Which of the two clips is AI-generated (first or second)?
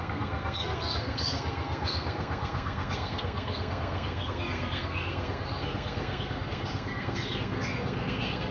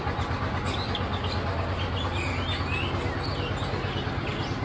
first